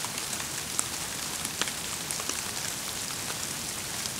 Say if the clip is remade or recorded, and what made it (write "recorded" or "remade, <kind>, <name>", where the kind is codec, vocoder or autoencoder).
recorded